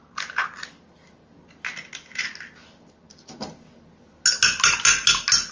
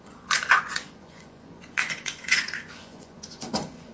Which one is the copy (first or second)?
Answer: second